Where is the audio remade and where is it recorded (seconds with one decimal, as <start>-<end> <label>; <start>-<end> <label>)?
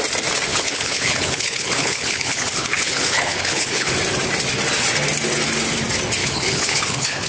0.0-0.5 recorded; 0.5-3.9 remade; 3.9-6.2 recorded; 6.2-7.3 remade